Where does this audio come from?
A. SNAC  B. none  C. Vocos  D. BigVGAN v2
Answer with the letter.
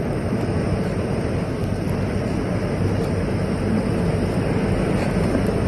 B